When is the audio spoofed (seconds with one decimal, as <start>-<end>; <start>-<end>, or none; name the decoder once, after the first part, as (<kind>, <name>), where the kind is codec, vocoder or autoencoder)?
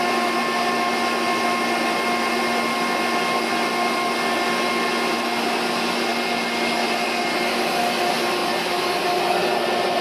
none